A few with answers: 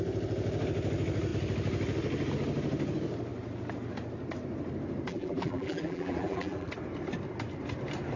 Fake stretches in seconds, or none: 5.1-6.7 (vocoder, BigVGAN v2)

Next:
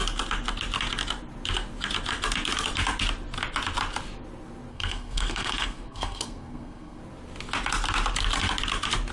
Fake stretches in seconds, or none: 4.7-7.0 (codec, SNAC)

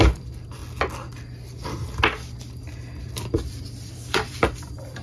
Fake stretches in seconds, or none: 0.0-0.6 (vocoder, BigVGAN v2); 3.1-5.0